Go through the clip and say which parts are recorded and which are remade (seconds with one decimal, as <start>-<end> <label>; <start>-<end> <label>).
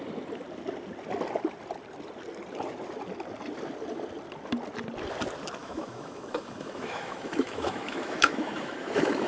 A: 0.0-5.6 recorded; 5.6-9.3 remade